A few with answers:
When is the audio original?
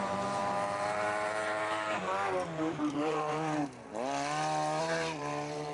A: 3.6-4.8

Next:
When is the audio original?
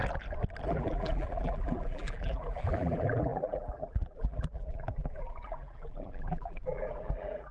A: 0.0-0.7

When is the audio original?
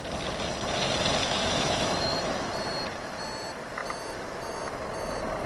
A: 0.0-1.2; 2.5-5.5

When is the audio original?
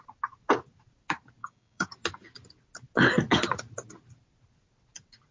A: 0.0-1.4; 1.9-5.3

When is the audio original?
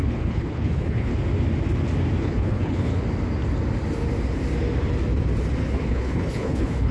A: 1.1-2.2; 2.9-5.7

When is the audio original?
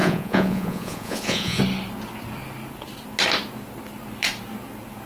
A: 1.6-5.1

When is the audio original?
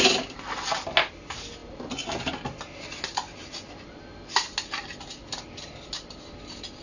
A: 0.0-6.8